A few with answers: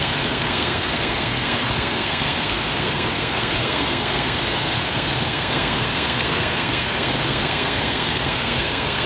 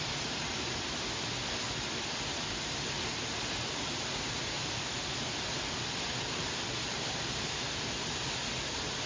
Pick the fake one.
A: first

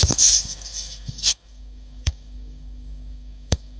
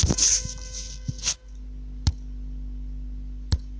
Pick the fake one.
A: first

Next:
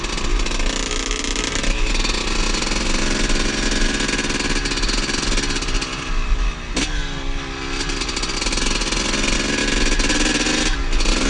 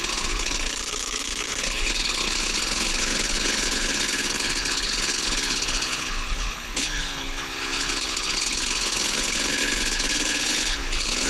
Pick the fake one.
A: second